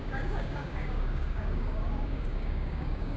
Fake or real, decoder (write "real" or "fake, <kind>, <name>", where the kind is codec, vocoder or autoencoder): fake, codec, DAC